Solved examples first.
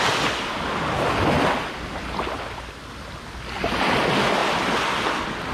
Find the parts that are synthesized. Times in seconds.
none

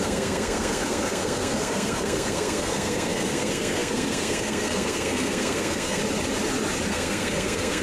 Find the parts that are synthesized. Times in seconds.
0.0-6.0 (codec, SNAC); 6.9-7.8

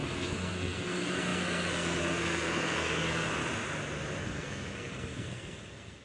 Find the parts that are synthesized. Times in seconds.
0.0-3.4 (codec, SNAC); 4.2-6.0

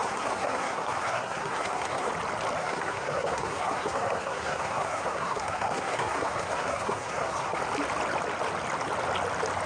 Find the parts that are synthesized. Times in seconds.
0.0-2.1 (codec, SNAC); 2.6-7.6

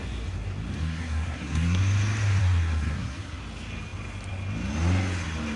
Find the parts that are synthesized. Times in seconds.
0.8-1.8 (codec, SNAC); 2.4-3.4

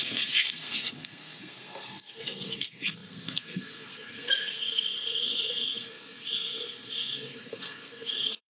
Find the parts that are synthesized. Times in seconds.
0.0-8.5 (codec, SNAC)

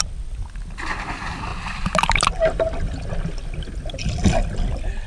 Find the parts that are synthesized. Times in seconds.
none

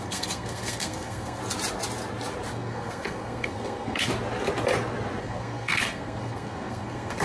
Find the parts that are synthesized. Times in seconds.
0.0-1.4 (codec, SNAC); 2.5-4.1; 5.2-7.2